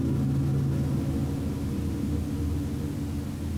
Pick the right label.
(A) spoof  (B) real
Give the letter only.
B